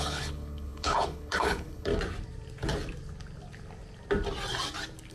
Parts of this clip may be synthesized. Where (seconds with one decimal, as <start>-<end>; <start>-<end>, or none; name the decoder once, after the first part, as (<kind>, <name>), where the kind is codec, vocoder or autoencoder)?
0.0-1.9 (codec, HILCodec)